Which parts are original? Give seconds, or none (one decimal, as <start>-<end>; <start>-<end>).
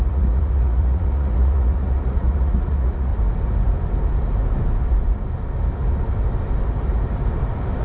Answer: 3.1-7.8